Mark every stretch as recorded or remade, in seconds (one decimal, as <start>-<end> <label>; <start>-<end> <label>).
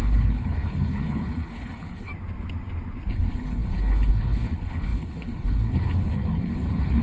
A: 0.0-2.1 remade; 2.1-3.1 recorded; 3.1-7.0 remade